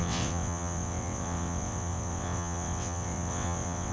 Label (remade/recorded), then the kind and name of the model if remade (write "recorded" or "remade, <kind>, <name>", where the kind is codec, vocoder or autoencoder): remade, vocoder, WaveNeXt